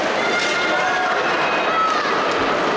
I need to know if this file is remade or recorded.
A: recorded